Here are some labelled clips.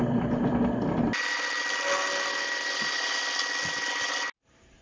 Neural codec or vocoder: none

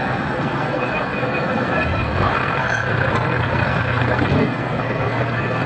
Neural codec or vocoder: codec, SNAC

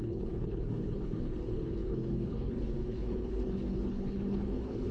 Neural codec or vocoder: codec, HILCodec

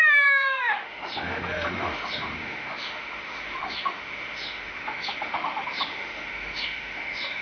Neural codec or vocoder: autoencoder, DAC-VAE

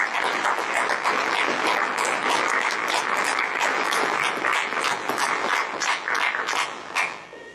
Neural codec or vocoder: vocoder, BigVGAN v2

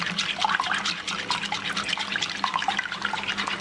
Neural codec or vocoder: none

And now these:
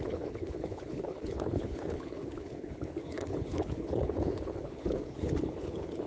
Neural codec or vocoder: codec, HILCodec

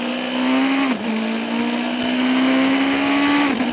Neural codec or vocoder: none